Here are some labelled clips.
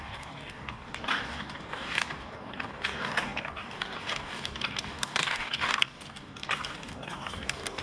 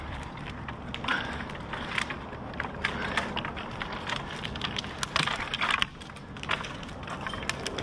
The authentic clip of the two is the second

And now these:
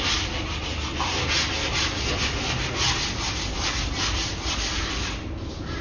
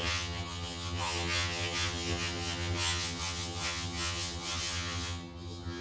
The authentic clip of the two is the first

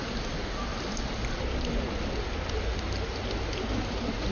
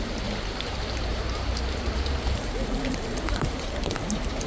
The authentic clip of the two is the first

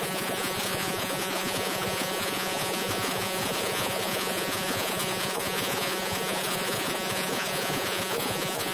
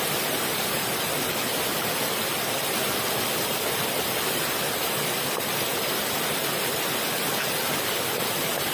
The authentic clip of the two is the second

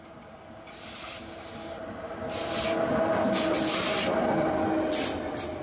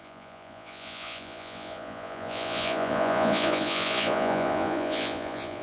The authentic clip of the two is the first